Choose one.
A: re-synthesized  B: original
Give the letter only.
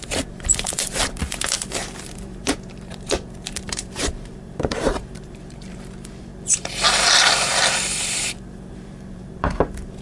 A